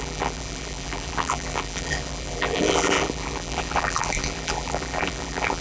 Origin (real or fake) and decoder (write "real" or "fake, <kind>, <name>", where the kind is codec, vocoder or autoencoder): fake, vocoder, BigVGAN v2